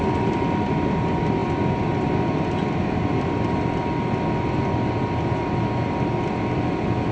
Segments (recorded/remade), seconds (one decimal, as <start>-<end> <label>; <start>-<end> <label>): 0.0-7.1 recorded

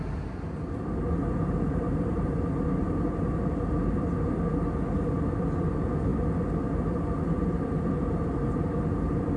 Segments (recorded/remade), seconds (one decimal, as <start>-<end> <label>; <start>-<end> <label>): 0.0-1.4 recorded; 1.4-3.6 remade; 3.6-9.4 recorded

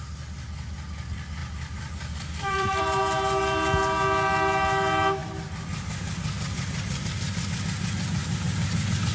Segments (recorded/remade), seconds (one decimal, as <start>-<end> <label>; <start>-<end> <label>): 0.0-1.4 recorded; 1.4-2.8 remade; 2.8-8.2 recorded; 8.2-9.1 remade

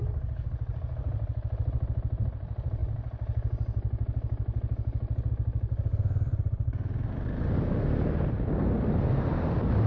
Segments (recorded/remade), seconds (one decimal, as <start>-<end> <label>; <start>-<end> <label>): 0.0-5.9 recorded; 5.9-8.5 remade; 8.5-9.9 recorded

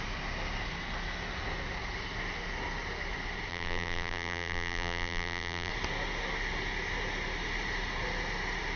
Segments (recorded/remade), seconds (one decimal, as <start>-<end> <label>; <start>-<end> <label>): 0.0-3.5 recorded; 3.5-5.7 remade; 5.7-8.8 recorded

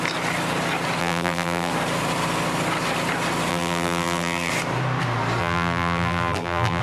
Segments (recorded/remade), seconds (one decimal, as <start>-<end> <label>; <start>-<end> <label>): 0.0-1.0 recorded; 1.0-1.7 remade; 1.7-3.5 recorded; 3.5-4.5 remade; 4.5-5.4 recorded; 5.4-6.8 remade

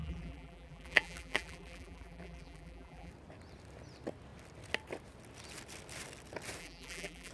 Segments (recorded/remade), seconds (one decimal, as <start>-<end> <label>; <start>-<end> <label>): 0.0-3.1 remade; 3.1-6.6 recorded; 6.6-7.3 remade

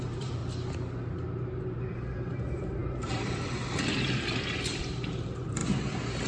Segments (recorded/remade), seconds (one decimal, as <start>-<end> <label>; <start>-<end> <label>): 0.0-0.4 remade; 0.4-1.9 recorded; 1.9-5.6 remade; 5.6-6.3 recorded